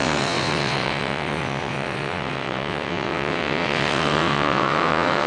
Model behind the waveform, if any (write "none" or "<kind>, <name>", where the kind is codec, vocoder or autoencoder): vocoder, WaveNeXt